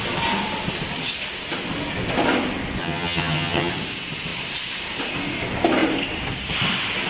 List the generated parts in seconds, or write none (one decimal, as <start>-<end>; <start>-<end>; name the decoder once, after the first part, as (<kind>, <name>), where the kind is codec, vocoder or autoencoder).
2.8-3.7 (vocoder, HiFi-GAN)